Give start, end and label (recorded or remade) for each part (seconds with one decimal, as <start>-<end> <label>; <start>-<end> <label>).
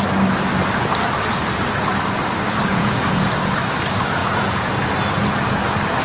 0.0-2.7 recorded; 2.7-3.3 remade; 3.3-4.2 recorded; 4.2-4.7 remade; 4.7-6.0 recorded